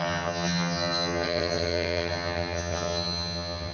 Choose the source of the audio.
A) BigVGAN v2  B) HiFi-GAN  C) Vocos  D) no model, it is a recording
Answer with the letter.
B